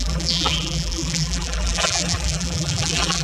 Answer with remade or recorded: remade